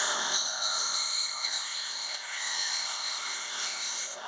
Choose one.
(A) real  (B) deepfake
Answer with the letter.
B